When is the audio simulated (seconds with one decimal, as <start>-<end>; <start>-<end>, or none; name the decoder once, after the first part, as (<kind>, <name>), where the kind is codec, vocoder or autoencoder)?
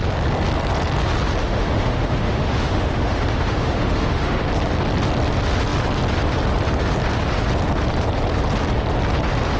1.4-4.4 (autoencoder, DAC-VAE)